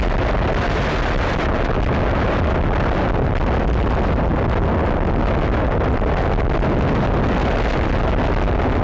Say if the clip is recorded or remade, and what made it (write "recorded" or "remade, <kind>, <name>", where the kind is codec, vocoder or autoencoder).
recorded